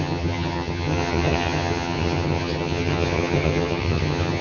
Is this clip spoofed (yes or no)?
yes